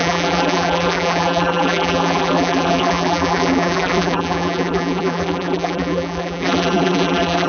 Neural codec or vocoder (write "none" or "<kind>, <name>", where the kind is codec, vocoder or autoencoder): vocoder, BigVGAN v2